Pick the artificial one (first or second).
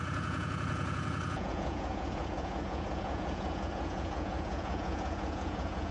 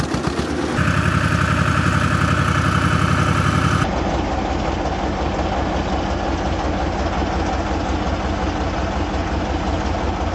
first